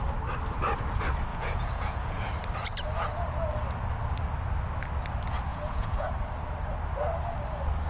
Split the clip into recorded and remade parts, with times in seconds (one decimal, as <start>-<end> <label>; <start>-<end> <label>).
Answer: 0.0-1.3 recorded; 1.3-2.3 remade; 2.3-5.5 recorded; 5.5-6.1 remade; 6.1-7.9 recorded